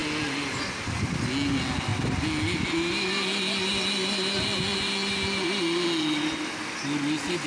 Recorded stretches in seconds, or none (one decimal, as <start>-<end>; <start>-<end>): 0.0-7.5